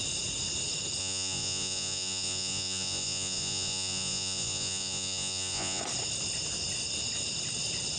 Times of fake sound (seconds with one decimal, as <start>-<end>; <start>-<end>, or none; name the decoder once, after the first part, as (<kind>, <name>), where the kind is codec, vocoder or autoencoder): 1.0-5.8 (vocoder, Vocos)